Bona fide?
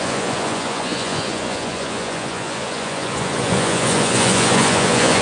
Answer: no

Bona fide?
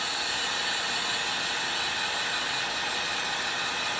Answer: yes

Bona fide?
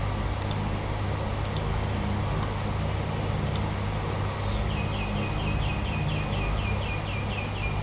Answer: yes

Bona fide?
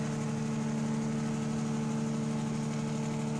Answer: yes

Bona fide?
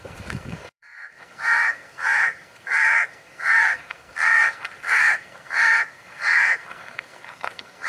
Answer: no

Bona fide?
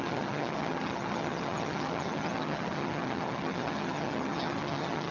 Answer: no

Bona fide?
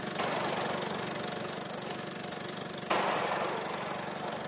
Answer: yes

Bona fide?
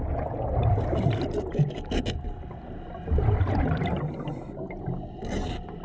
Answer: yes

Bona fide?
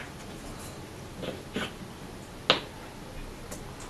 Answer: yes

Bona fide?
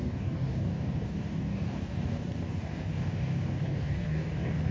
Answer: no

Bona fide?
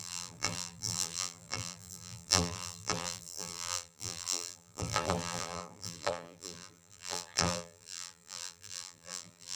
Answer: no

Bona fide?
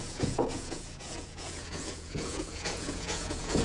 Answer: no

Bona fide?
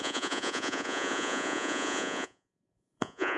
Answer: no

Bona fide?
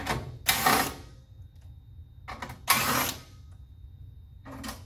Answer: yes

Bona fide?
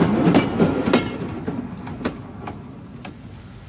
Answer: yes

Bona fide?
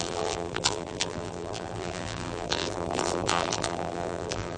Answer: no